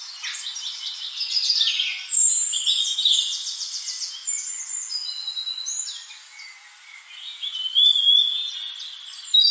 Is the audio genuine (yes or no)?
yes